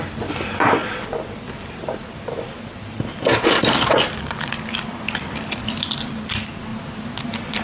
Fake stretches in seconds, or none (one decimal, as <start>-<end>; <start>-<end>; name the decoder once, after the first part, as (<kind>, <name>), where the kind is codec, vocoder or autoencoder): 0.0-6.7 (vocoder, BigVGAN v2)